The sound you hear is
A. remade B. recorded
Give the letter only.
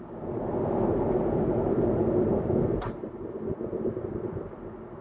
B